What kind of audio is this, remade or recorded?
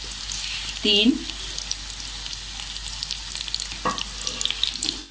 recorded